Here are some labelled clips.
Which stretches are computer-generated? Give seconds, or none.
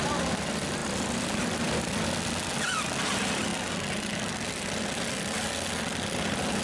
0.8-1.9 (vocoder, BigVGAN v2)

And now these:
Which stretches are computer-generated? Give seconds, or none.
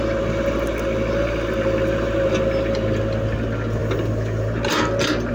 none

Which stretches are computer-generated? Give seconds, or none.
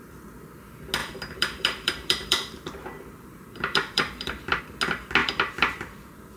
1.0-4.6 (vocoder, BigVGAN v2); 5.2-6.4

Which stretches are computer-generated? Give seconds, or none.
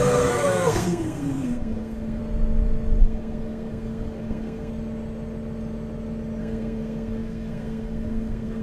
0.0-2.2 (codec, SNAC); 3.0-4.7; 6.4-8.6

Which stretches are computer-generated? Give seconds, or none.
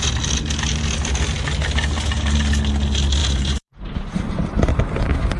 3.2-4.7 (vocoder, BigVGAN v2)